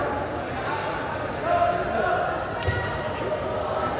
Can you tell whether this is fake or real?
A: real